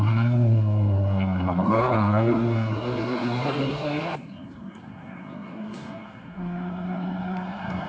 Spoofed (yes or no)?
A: yes